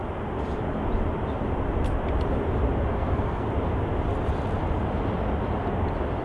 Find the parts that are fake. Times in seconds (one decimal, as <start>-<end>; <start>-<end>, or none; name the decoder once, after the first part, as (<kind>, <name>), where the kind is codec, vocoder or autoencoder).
2.9-3.5 (codec, SNAC)